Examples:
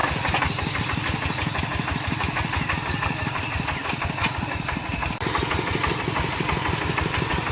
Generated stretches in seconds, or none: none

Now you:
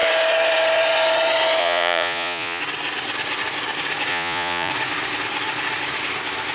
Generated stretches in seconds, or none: 1.6-2.6 (vocoder, Vocos); 4.1-4.7

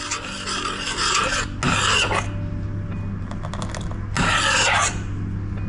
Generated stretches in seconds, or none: none

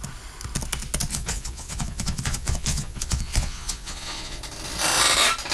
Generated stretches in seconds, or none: 1.1-4.4 (vocoder, Vocos)

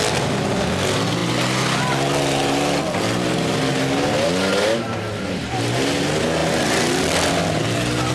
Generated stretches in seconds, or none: none

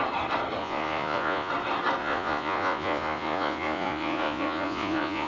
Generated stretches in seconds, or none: 0.6-1.5 (vocoder, Vocos); 2.0-5.3

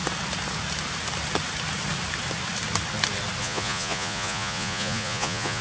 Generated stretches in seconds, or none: 3.4-5.6 (vocoder, Vocos)

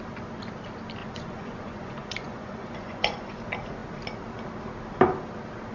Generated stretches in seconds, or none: 1.0-3.4 (vocoder, Vocos)